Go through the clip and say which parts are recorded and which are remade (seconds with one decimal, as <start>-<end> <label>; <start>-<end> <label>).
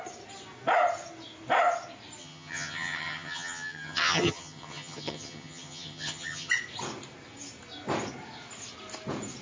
0.0-2.2 recorded; 2.2-6.5 remade; 6.5-9.4 recorded